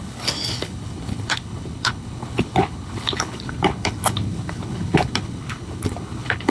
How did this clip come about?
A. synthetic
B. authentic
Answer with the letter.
A